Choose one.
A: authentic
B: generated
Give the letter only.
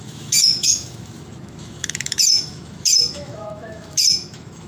B